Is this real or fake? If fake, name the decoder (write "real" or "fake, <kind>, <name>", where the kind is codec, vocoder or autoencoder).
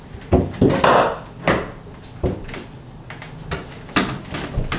real